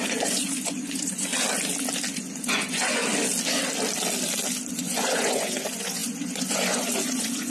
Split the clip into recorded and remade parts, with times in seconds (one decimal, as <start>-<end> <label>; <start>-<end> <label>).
0.0-1.3 remade; 1.3-2.1 recorded; 2.1-3.0 remade; 3.0-4.7 recorded; 4.7-7.5 remade